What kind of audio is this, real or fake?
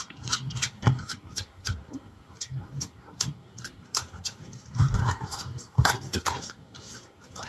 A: fake